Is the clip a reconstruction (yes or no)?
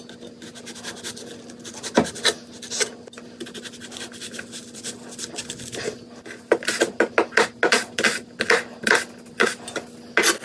no